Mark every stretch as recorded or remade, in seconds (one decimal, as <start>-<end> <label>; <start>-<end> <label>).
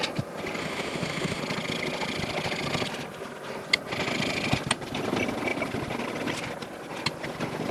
0.0-0.6 recorded; 0.6-1.4 remade; 1.4-7.7 recorded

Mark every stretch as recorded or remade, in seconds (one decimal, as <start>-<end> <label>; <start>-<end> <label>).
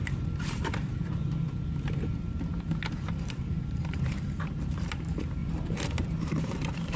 0.0-0.9 remade; 0.9-3.2 recorded; 3.2-5.4 remade; 5.4-6.0 recorded; 6.0-7.0 remade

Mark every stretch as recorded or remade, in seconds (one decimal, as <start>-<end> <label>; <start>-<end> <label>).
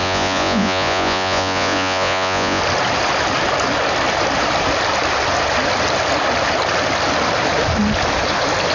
0.0-2.6 remade; 2.6-8.7 recorded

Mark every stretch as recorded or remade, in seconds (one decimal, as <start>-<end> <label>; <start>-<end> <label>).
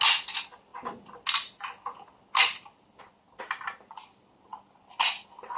0.0-5.6 recorded